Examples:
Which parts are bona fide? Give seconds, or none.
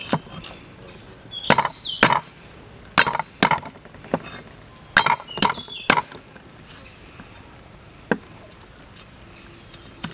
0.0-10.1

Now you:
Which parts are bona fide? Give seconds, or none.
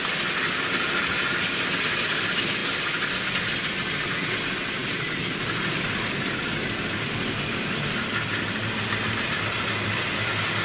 0.0-4.8; 7.4-10.6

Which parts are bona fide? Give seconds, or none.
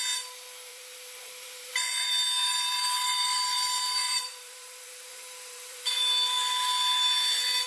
0.0-0.7; 1.7-2.4; 6.0-7.7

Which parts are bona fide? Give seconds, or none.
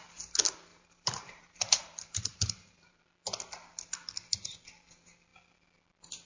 0.0-0.7; 3.0-6.3